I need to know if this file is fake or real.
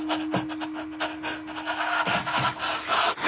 real